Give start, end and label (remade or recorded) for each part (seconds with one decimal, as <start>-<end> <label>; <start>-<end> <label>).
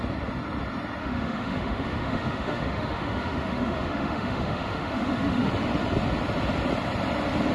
0.0-1.0 recorded; 1.0-5.5 remade; 5.5-7.5 recorded